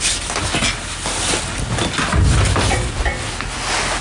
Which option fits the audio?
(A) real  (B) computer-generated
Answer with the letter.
A